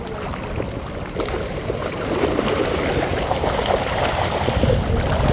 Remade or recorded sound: recorded